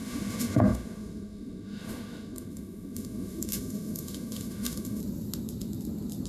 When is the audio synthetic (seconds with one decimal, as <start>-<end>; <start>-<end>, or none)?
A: 0.0-5.0